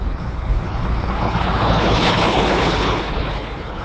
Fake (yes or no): yes